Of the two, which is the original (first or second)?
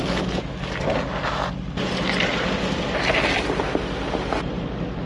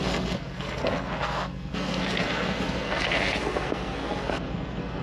first